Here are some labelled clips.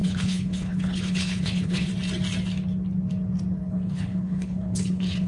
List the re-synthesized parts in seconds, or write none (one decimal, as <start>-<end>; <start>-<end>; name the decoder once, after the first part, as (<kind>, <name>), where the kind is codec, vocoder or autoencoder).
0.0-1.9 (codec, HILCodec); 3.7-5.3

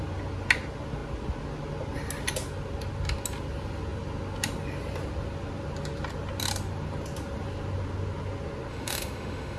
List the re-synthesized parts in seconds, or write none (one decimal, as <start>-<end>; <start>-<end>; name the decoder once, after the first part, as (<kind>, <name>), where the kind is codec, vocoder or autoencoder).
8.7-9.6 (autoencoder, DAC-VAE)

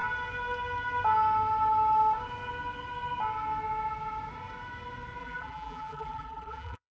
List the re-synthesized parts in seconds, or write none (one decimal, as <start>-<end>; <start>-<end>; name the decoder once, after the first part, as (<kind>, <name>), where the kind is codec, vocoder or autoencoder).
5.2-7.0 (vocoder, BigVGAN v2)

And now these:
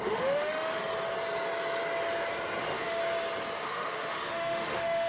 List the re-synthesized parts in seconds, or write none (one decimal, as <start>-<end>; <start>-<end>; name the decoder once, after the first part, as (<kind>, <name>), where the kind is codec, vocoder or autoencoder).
0.0-0.8 (autoencoder, DAC-VAE); 2.6-3.0; 3.6-5.1

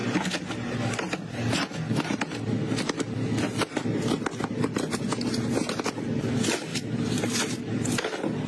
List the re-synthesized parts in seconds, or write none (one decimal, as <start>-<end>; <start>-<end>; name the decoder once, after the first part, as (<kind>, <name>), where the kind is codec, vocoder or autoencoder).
none

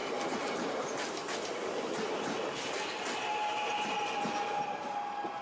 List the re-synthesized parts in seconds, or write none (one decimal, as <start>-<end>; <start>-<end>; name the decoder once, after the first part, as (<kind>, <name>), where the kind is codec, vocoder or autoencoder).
none

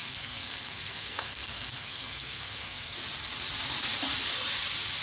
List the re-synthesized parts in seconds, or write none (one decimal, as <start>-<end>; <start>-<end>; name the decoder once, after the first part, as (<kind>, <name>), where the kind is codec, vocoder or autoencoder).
0.0-3.0 (codec, SNAC)

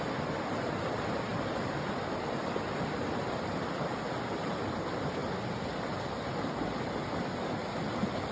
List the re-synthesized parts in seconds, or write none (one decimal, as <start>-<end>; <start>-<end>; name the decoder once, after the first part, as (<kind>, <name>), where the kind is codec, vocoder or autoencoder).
none